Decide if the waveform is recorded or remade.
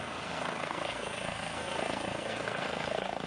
remade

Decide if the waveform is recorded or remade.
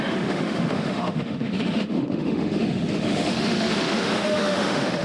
remade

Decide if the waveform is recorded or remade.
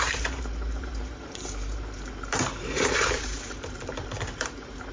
remade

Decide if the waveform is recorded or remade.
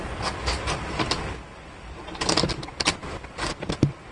recorded